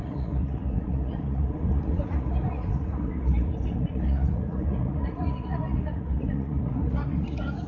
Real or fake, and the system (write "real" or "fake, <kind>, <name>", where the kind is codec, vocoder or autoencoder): fake, vocoder, Vocos